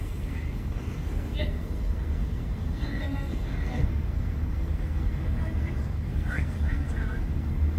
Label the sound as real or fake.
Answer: fake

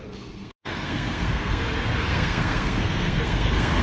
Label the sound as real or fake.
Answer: fake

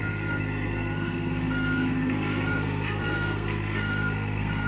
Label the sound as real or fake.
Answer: fake